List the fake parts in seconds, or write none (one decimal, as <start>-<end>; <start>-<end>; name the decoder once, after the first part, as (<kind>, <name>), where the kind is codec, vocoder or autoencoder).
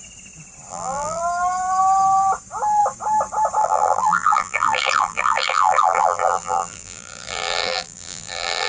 0.7-1.2 (vocoder, BigVGAN v2); 3.6-8.7